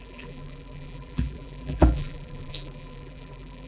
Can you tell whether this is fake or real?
fake